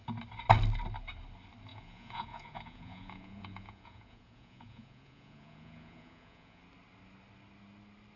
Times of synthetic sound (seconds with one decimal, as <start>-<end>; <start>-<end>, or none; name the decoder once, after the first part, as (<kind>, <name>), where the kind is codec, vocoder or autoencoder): 1.7-6.6 (vocoder, Vocos)